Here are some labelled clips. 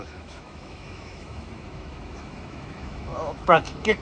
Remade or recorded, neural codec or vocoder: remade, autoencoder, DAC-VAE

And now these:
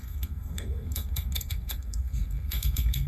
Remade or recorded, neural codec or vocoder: remade, codec, SNAC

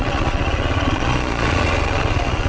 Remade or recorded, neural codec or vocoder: remade, vocoder, Vocos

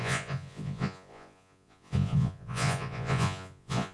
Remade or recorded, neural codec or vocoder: remade, vocoder, Vocos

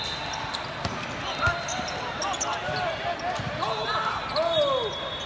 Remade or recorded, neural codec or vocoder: recorded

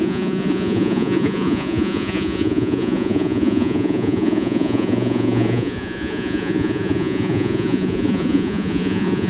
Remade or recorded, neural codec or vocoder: remade, vocoder, Vocos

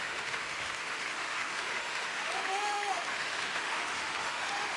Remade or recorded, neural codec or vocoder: remade, autoencoder, DAC-VAE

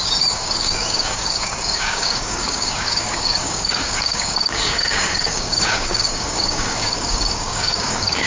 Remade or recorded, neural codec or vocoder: remade, codec, DAC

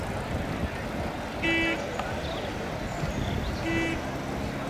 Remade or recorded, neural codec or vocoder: recorded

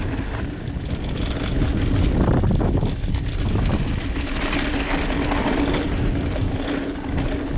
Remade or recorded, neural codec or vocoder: recorded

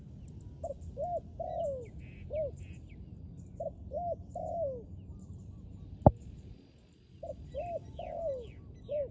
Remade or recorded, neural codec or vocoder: recorded